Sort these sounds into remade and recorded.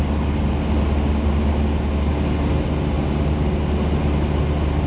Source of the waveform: recorded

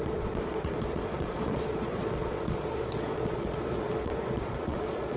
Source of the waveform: remade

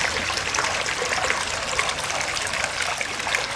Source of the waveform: recorded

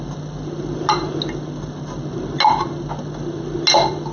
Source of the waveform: recorded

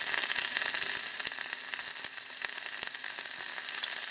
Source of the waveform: remade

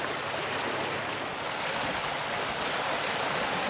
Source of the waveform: recorded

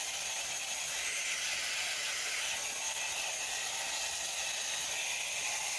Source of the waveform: recorded